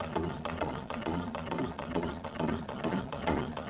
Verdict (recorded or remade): remade